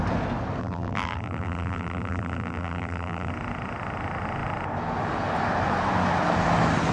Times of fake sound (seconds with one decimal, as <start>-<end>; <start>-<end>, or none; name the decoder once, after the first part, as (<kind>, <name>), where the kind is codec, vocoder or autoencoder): 0.6-3.3 (vocoder, BigVGAN v2)